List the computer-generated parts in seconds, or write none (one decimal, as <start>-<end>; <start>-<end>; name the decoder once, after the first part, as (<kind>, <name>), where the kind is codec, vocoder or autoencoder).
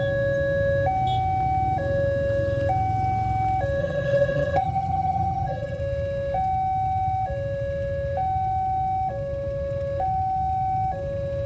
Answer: 3.8-5.8 (vocoder, HiFi-GAN)